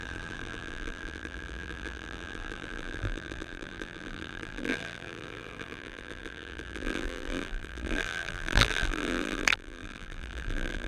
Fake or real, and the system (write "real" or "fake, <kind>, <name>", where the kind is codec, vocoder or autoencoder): fake, vocoder, BigVGAN v2